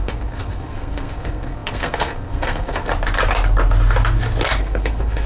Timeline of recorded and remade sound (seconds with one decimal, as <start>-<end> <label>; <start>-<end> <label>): 0.0-2.9 remade; 2.9-4.6 recorded; 4.6-5.3 remade